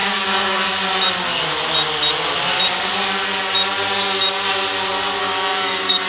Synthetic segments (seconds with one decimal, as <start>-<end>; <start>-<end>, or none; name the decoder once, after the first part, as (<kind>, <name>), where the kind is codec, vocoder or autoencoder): 0.0-0.7 (codec, DAC); 5.2-6.1